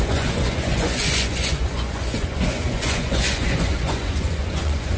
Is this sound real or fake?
fake